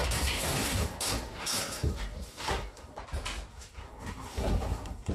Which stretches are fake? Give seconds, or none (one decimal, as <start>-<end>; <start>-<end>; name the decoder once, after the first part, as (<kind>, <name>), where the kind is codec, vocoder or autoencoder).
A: 0.0-3.0 (codec, SNAC); 3.5-5.1